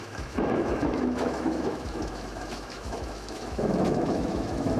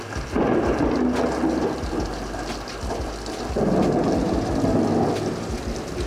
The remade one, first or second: first